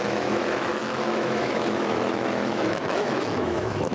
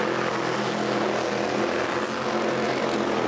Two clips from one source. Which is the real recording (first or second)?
second